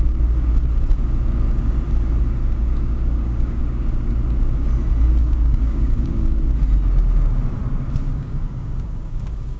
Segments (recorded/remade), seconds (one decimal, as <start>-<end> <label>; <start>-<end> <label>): 0.0-2.4 recorded; 2.4-3.6 remade; 3.6-5.2 recorded; 5.2-6.4 remade; 6.4-8.1 recorded; 8.1-9.6 remade